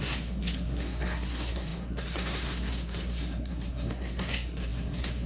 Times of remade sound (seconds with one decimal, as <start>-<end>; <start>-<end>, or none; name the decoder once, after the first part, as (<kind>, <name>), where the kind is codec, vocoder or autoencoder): 0.0-5.3 (codec, SNAC)